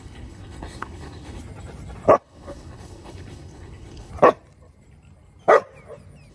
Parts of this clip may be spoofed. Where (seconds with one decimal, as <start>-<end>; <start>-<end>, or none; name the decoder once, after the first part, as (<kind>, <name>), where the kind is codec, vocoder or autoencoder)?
0.0-1.4 (codec, HILCodec); 2.2-4.1